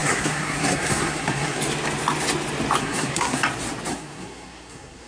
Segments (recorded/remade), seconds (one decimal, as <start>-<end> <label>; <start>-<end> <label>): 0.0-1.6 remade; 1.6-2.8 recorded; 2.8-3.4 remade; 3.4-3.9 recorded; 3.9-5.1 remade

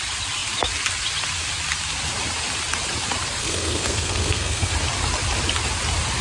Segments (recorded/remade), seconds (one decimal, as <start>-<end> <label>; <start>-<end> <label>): 0.0-3.4 recorded; 3.4-4.7 remade; 4.7-6.2 recorded

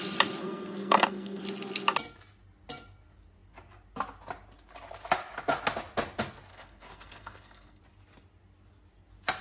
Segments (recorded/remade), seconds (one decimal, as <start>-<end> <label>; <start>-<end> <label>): 0.0-0.4 recorded; 0.4-1.4 remade; 1.4-6.5 recorded; 6.5-7.8 remade; 7.8-9.4 recorded

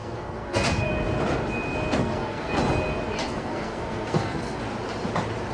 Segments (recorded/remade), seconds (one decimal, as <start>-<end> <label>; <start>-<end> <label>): 0.0-0.9 remade; 0.9-2.0 recorded; 2.0-2.6 remade; 2.6-3.3 recorded; 3.3-4.6 remade; 4.6-5.5 recorded